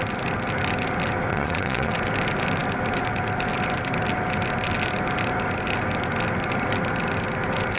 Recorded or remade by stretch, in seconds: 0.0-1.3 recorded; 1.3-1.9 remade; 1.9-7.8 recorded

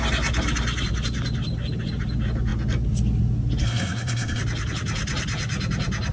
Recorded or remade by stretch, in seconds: 0.0-3.6 recorded; 3.6-4.4 remade; 4.4-6.1 recorded